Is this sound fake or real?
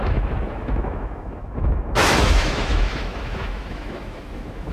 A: fake